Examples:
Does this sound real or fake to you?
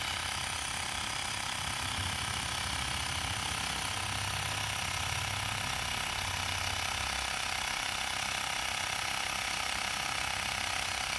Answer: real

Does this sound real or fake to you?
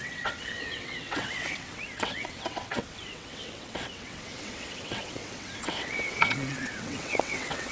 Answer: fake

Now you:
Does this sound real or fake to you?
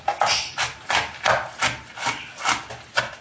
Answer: real